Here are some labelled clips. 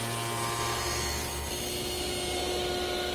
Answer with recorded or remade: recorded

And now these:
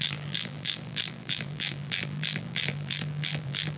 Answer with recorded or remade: remade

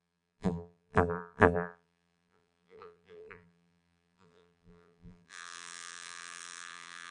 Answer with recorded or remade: remade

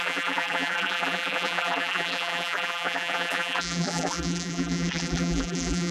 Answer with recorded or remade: remade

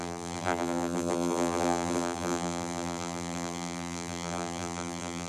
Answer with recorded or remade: remade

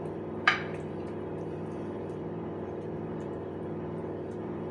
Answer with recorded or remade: remade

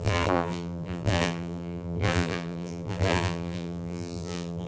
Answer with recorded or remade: remade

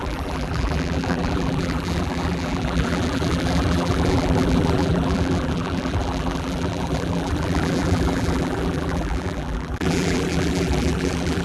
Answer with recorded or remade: remade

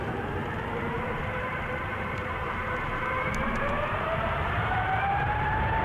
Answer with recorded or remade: remade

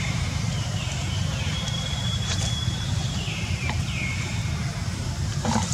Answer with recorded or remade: remade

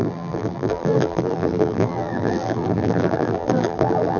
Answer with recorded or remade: remade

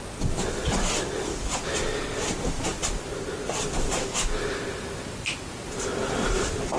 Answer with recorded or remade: recorded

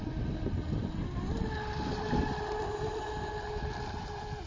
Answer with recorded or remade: recorded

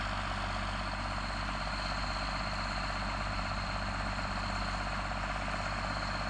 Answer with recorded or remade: recorded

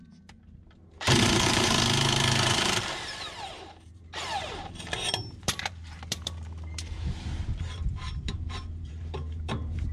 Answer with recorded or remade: remade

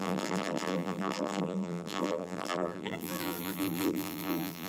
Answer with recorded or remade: remade